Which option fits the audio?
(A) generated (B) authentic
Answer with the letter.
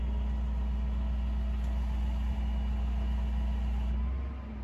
B